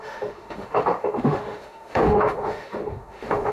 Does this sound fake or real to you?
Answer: fake